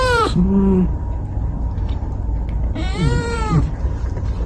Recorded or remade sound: remade